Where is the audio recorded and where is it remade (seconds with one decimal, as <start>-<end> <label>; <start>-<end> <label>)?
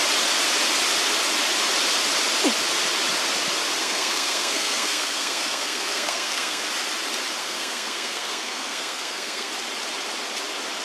0.0-3.8 recorded; 3.8-6.7 remade; 6.7-7.4 recorded; 7.4-9.5 remade; 9.5-10.8 recorded